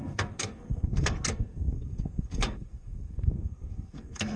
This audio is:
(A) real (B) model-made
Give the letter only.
B